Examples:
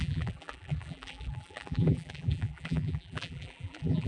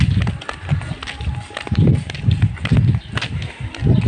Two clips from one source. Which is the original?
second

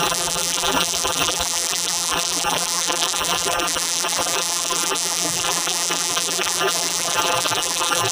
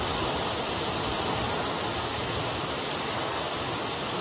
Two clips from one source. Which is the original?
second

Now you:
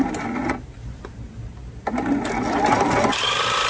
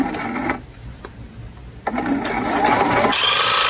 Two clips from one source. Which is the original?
second